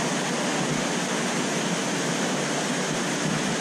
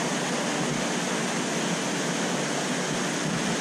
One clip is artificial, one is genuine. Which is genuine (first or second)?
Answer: second